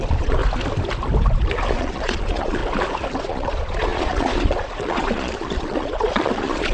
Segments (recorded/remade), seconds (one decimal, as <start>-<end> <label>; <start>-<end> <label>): 0.0-0.4 remade; 0.4-1.7 recorded; 1.7-2.6 remade; 2.6-3.2 recorded; 3.2-6.7 remade